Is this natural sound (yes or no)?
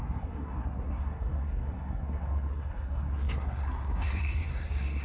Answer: no